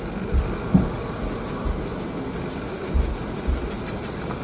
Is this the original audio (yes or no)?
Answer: yes